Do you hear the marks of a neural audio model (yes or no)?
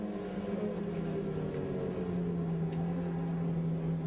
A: no